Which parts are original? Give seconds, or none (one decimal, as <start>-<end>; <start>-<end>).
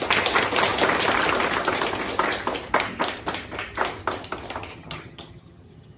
0.0-4.7